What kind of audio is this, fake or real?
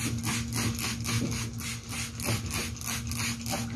real